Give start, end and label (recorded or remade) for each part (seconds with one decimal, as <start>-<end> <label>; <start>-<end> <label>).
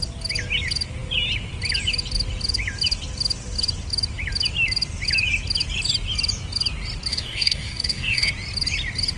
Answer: 0.0-7.1 recorded; 7.1-8.3 remade; 8.3-9.2 recorded